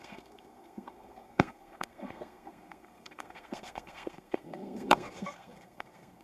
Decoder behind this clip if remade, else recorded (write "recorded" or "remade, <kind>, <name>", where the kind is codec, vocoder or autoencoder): remade, codec, SNAC